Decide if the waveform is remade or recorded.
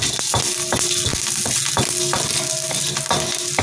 recorded